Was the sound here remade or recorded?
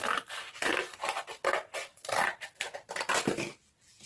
remade